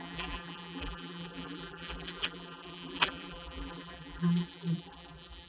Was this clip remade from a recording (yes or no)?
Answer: yes